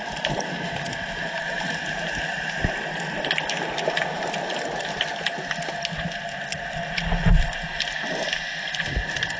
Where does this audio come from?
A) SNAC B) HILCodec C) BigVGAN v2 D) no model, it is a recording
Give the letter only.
D